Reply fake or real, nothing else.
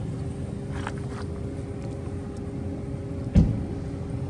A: real